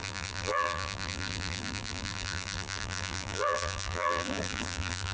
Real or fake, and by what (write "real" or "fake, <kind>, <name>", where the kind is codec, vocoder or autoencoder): fake, vocoder, BigVGAN v2